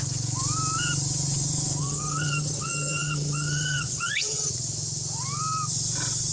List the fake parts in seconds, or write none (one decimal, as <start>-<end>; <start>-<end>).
1.8-4.5